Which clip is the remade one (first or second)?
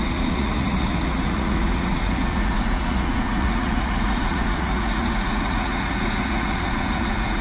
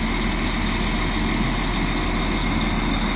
first